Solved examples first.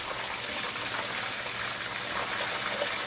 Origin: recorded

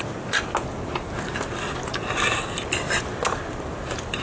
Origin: recorded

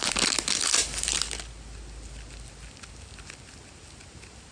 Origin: recorded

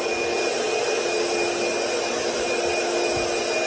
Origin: recorded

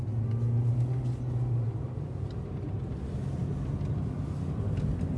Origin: recorded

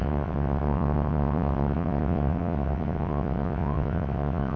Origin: remade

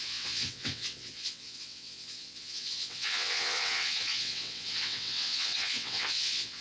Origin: remade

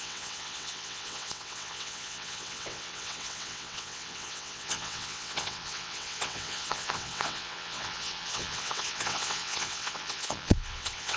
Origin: remade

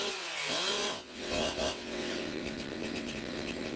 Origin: remade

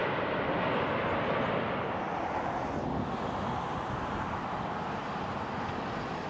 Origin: recorded